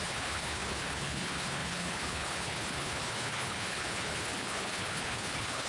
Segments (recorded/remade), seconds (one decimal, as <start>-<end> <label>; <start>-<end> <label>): 0.0-5.7 remade